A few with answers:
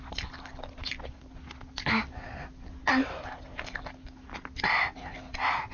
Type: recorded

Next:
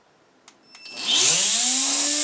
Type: recorded